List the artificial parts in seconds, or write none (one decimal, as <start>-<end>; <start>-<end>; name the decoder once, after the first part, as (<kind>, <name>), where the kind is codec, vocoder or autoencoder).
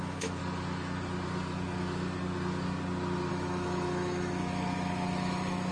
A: 0.0-0.4 (autoencoder, DAC-VAE); 3.3-5.7